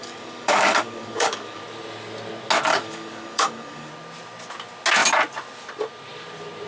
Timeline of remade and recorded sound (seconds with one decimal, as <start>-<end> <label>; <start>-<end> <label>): 0.0-1.6 remade; 1.6-2.7 recorded; 2.7-3.9 remade; 3.9-6.7 recorded